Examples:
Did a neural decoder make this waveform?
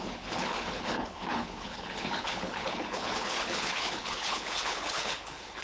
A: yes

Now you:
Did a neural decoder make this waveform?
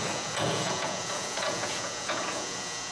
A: yes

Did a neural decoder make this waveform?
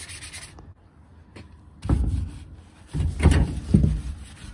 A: no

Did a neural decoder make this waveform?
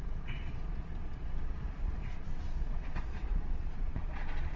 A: yes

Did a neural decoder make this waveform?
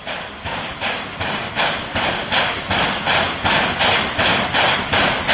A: no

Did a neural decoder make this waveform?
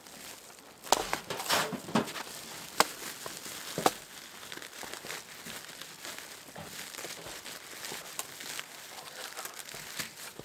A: no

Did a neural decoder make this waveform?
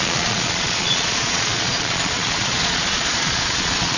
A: yes